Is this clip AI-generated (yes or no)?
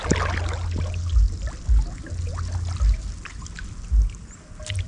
no